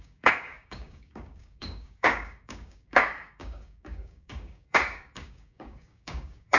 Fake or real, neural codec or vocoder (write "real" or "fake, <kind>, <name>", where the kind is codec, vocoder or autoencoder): fake, codec, DAC